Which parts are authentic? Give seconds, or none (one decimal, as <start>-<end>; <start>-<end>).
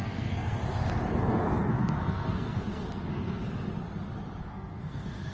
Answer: 0.6-1.3; 3.4-4.4